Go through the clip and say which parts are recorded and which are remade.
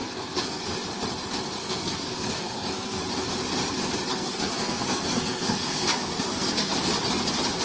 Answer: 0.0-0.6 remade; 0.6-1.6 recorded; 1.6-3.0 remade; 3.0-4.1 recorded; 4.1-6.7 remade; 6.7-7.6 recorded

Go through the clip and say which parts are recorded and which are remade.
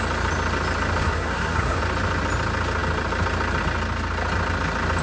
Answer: 0.0-1.0 recorded; 1.0-1.8 remade; 1.8-5.0 recorded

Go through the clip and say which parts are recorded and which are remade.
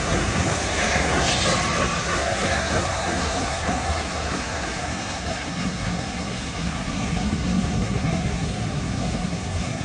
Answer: 0.0-1.3 remade; 1.3-2.0 recorded; 2.0-9.8 remade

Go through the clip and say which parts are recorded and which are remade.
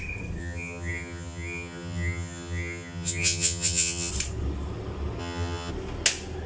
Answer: 0.0-0.4 recorded; 0.4-4.1 remade; 4.1-5.2 recorded; 5.2-5.7 remade; 5.7-6.5 recorded